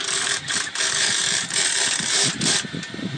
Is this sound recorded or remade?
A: remade